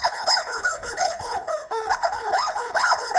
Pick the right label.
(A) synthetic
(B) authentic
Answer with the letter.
A